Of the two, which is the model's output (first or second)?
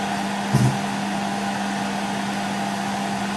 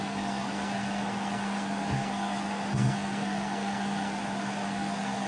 second